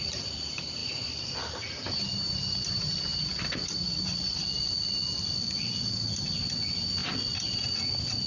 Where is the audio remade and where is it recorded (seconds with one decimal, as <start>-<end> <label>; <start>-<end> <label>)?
0.0-5.0 remade; 5.0-5.8 recorded; 5.8-7.0 remade; 7.0-8.3 recorded